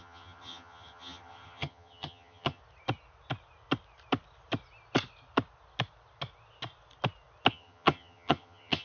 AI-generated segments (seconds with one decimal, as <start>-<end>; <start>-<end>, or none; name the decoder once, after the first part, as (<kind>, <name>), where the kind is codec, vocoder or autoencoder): 0.0-2.6 (vocoder, HiFi-GAN); 7.5-8.8